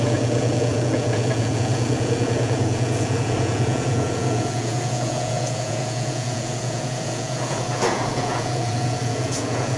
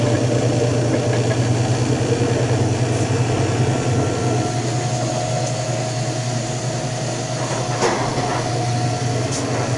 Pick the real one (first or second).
second